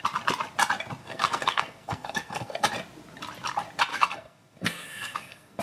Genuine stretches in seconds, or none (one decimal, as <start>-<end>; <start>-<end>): 0.0-1.0; 2.7-3.9